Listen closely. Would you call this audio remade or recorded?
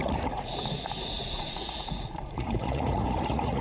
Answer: remade